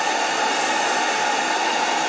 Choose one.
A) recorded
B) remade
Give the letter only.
A